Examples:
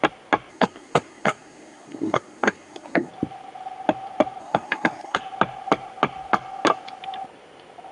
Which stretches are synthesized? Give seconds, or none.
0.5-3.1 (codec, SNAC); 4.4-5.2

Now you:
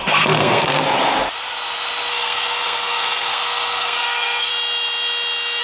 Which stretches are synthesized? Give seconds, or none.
0.0-0.8 (codec, SNAC); 2.1-4.5

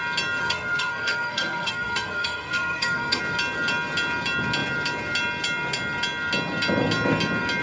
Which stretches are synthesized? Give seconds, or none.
0.4-3.2 (codec, SNAC)